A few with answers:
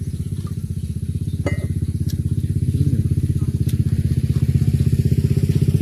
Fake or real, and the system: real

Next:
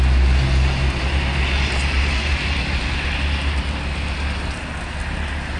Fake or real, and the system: real